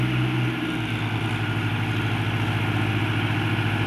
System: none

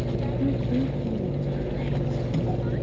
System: none